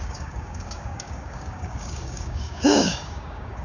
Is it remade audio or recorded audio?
remade